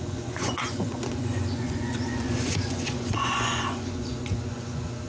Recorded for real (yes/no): no